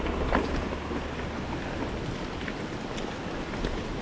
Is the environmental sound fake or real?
real